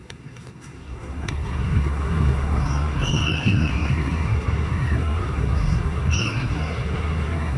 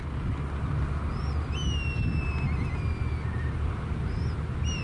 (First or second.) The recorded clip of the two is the second